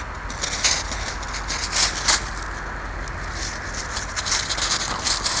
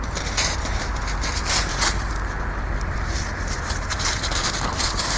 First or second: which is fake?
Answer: second